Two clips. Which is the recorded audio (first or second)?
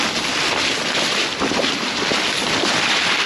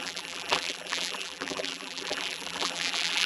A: first